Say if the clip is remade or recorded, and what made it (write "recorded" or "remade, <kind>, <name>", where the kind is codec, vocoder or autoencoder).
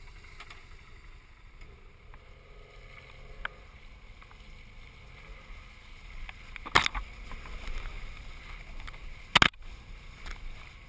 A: recorded